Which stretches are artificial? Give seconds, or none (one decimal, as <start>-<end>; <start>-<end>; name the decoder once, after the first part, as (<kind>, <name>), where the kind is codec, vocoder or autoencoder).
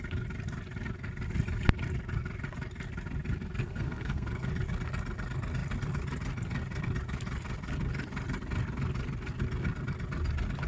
3.6-4.5 (codec, SNAC)